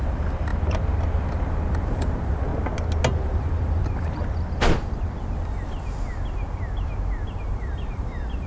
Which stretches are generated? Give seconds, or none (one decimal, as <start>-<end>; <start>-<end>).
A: 0.0-2.5; 3.2-4.2; 7.3-8.5